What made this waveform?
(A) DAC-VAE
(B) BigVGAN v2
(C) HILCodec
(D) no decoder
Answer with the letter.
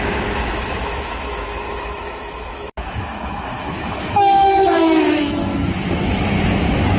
A